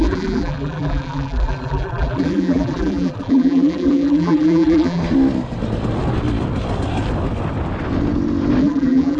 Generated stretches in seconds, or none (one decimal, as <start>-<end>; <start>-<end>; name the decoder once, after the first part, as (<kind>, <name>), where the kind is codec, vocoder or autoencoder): 0.0-5.0 (vocoder, BigVGAN v2); 8.6-9.2